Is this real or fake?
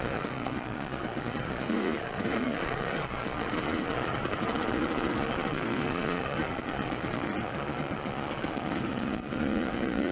fake